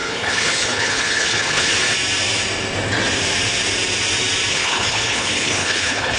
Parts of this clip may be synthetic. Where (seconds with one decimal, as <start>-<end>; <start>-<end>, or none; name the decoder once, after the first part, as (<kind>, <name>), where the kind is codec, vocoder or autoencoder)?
0.0-1.7 (codec, HILCodec); 4.5-6.2